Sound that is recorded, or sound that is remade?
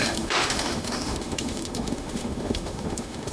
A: remade